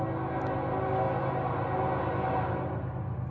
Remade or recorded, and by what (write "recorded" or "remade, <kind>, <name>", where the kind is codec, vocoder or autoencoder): recorded